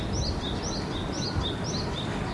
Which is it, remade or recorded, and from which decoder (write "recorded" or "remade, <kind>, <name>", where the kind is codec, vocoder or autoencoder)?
recorded